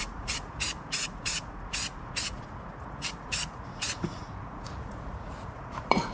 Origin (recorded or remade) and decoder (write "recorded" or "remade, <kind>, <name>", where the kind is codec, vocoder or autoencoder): remade, vocoder, Vocos